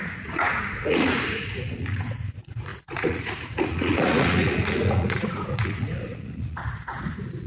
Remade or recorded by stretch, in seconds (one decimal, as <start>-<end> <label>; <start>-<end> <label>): 0.0-7.5 remade